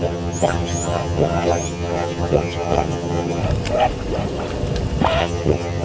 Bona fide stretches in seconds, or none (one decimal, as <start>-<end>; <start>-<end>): 3.4-5.2